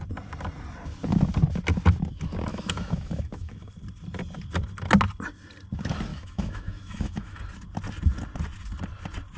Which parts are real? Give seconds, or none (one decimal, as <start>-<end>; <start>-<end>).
0.0-2.5; 3.7-6.1; 7.4-9.4